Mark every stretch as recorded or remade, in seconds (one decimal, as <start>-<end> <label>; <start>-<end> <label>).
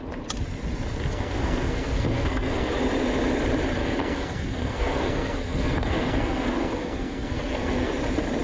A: 0.0-1.1 recorded; 1.1-2.7 remade; 2.7-3.8 recorded; 3.8-7.9 remade; 7.9-8.4 recorded